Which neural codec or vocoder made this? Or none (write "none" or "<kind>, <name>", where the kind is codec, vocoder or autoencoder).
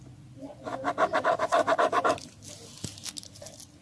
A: none